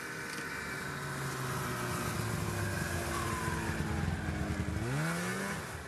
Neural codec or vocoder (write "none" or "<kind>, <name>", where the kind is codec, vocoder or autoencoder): none